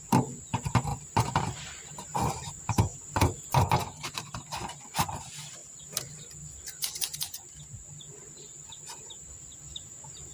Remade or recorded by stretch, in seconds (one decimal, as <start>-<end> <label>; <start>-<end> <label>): 0.0-0.9 recorded; 0.9-2.5 remade; 2.5-5.6 recorded; 5.6-6.2 remade; 6.2-10.3 recorded